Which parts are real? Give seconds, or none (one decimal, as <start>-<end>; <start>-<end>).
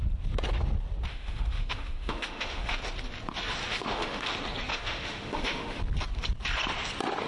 0.0-1.1; 2.8-3.7; 4.3-4.7; 5.8-7.3